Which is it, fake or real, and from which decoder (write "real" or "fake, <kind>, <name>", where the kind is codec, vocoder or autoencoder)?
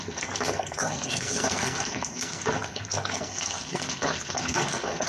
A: fake, codec, SNAC